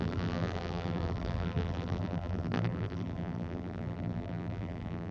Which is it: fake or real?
fake